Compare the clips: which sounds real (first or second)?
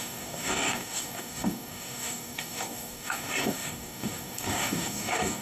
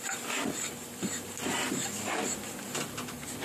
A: second